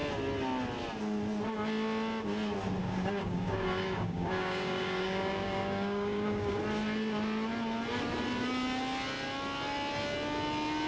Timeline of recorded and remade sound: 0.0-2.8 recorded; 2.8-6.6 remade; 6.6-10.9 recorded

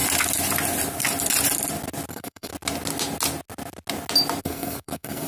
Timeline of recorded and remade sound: 0.0-2.1 recorded; 2.1-2.5 remade; 2.5-4.4 recorded; 4.4-5.3 remade

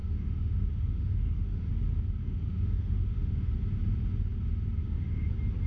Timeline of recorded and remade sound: 0.0-1.7 remade; 1.7-2.2 recorded; 2.2-3.5 remade; 3.5-4.8 recorded; 4.8-5.3 remade; 5.3-5.7 recorded

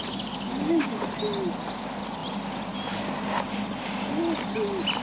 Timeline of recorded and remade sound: 0.0-0.5 recorded; 0.5-1.0 remade; 1.0-5.0 recorded